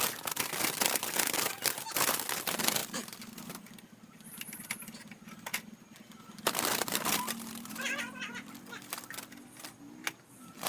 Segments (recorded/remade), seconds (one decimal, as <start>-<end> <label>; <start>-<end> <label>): 0.0-10.7 recorded